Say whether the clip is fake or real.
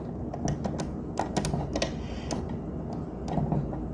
real